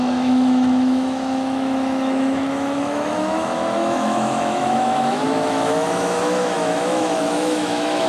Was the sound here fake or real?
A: fake